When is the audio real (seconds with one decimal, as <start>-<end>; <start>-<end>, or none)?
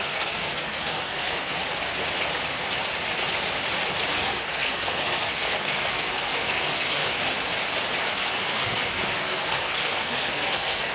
1.6-4.1; 7.0-8.0